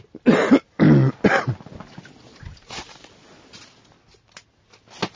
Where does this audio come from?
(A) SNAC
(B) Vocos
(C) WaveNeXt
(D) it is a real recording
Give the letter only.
D